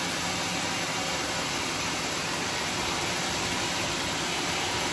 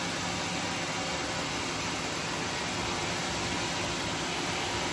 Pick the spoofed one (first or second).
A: first